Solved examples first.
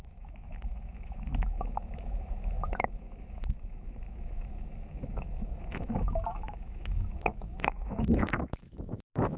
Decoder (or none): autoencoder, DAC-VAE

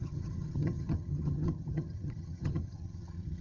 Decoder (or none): vocoder, HiFi-GAN